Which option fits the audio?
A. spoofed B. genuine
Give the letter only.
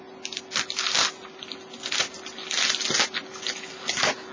B